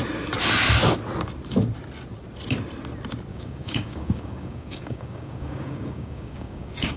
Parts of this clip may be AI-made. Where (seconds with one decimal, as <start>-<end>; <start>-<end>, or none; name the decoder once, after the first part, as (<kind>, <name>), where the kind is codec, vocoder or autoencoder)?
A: 3.3-7.0 (codec, DAC)